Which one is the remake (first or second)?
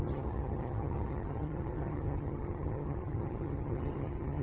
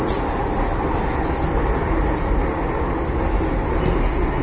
first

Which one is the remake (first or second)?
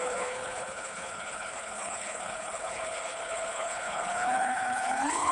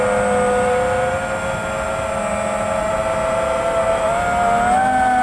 first